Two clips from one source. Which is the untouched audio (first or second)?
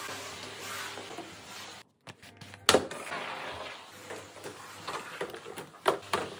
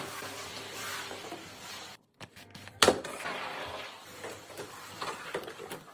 first